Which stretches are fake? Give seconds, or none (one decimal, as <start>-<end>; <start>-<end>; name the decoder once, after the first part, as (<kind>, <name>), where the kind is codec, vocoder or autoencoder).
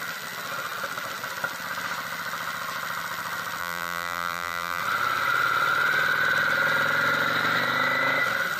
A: 3.6-4.8 (vocoder, BigVGAN v2)